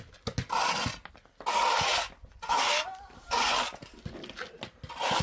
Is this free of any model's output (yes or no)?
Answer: yes